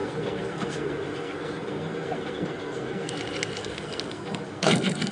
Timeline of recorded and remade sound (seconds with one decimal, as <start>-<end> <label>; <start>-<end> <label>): 0.0-3.1 remade; 3.1-3.6 recorded; 3.6-5.1 remade